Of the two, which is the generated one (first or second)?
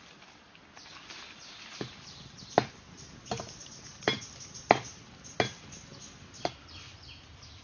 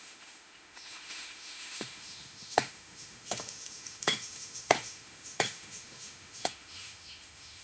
second